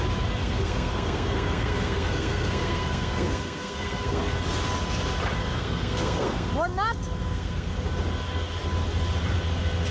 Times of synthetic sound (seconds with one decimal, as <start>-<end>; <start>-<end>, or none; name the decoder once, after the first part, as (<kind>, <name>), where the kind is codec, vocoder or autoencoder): 0.4-4.2 (codec, SNAC); 5.4-6.5; 7.2-7.7